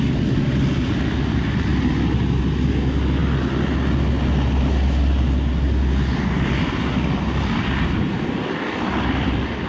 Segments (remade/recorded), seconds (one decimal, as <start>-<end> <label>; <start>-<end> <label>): 0.0-9.7 recorded

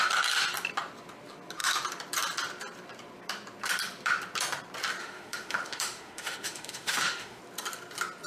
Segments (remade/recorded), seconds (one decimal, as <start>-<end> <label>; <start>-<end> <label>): 0.0-5.0 recorded; 5.0-7.4 remade; 7.4-8.3 recorded